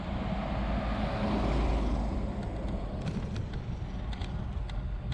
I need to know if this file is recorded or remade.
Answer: recorded